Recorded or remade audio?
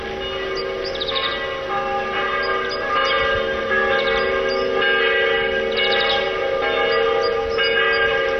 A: recorded